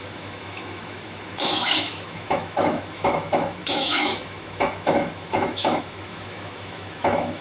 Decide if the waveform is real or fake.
fake